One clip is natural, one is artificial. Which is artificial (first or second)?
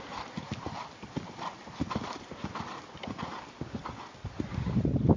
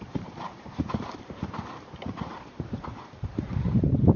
second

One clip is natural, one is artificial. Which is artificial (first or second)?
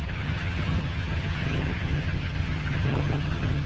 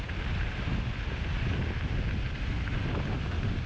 first